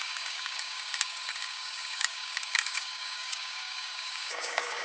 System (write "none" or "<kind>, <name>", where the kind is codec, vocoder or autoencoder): codec, DAC